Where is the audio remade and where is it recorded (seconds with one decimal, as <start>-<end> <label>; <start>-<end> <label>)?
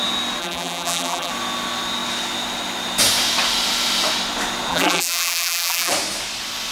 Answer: 0.0-0.4 recorded; 0.4-1.3 remade; 1.3-4.7 recorded; 4.7-5.9 remade; 5.9-6.7 recorded